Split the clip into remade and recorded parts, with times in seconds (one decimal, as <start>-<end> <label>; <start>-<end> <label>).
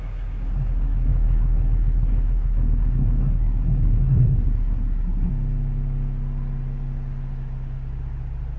0.0-5.3 remade; 5.3-8.6 recorded